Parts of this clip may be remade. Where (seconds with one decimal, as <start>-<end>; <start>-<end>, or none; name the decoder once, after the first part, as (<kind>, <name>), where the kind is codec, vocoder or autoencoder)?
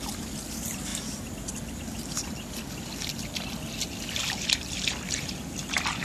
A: none